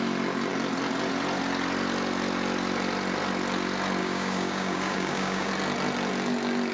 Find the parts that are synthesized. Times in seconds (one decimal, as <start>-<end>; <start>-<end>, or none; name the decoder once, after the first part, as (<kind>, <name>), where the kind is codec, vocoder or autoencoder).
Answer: 4.0-5.5 (codec, DAC)